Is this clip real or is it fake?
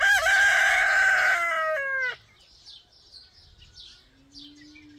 real